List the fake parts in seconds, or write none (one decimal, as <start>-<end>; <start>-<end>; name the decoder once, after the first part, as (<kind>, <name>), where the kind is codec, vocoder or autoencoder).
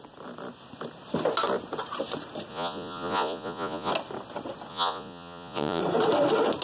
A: 2.5-3.9 (vocoder, Vocos); 4.7-5.8